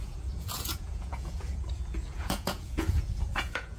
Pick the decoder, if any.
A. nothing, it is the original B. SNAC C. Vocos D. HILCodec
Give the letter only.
C